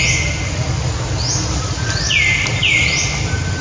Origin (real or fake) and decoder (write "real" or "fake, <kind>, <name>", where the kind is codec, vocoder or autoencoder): real